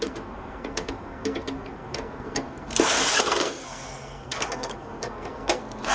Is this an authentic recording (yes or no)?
no